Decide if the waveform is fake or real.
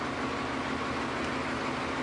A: real